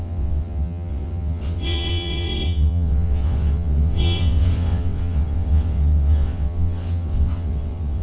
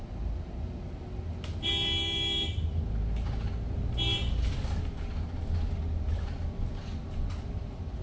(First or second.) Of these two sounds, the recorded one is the second